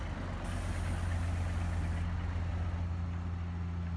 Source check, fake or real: real